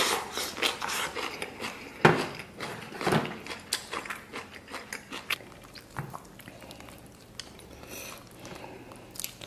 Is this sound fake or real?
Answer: real